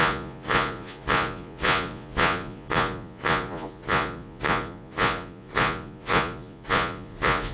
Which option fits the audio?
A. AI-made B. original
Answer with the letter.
A